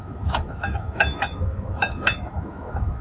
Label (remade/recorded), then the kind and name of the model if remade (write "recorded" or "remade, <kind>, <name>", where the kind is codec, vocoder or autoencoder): remade, autoencoder, DAC-VAE